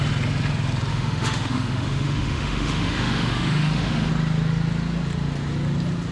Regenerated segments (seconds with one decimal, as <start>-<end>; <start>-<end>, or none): 0.9-4.1